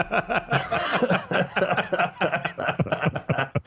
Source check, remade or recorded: recorded